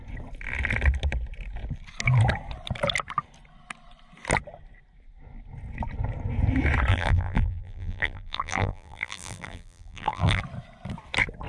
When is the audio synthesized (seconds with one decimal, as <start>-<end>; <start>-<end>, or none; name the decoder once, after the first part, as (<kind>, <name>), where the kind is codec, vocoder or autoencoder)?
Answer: 6.9-10.4 (vocoder, BigVGAN v2)